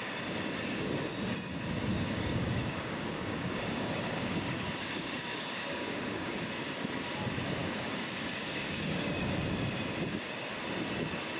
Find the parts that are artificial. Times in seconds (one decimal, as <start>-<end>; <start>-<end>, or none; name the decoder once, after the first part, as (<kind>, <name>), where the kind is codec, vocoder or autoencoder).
1.9-6.5 (codec, DAC); 7.6-9.3